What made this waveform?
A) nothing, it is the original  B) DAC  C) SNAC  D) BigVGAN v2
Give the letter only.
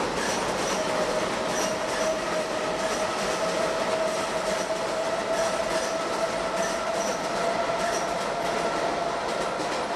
A